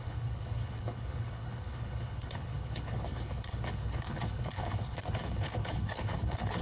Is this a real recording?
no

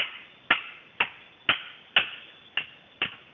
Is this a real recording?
yes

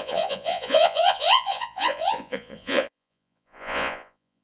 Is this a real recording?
no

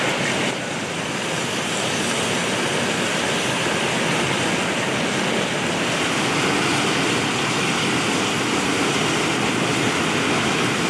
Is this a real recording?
yes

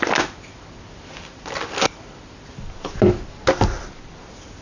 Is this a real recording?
yes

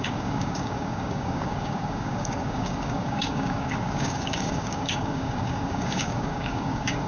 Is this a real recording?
no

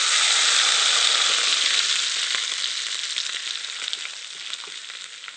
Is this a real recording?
yes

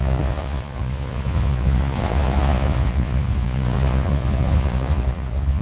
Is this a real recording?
no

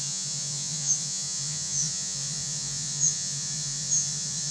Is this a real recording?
no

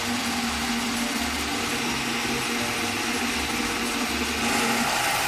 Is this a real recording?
yes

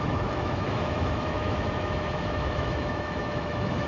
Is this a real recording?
no